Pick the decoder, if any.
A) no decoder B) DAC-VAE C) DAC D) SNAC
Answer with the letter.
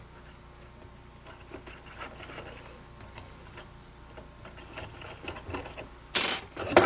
A